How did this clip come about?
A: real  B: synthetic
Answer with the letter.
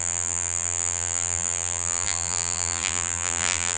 B